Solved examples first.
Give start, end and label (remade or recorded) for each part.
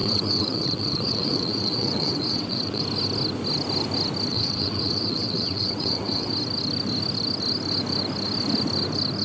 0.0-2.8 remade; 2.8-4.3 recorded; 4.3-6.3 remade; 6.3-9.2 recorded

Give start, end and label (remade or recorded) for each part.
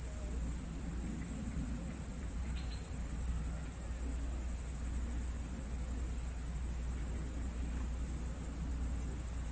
0.0-1.4 recorded; 1.4-3.3 remade; 3.3-9.5 recorded